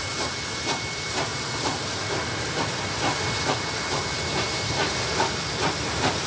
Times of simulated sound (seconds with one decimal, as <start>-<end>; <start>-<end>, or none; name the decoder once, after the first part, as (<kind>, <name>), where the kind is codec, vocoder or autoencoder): none